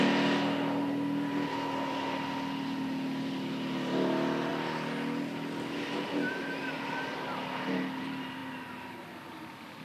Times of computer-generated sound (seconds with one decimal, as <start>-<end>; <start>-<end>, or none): none